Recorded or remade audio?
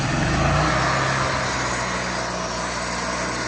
recorded